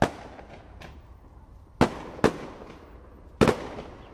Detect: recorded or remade recorded